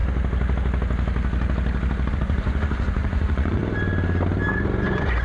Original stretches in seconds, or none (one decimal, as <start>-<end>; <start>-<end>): 0.0-2.1; 3.6-4.5